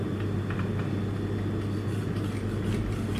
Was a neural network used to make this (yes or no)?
no